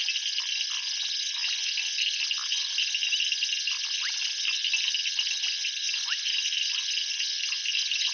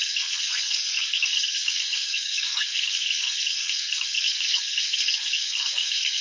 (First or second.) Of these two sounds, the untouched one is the first